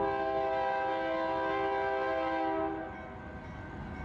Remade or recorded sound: recorded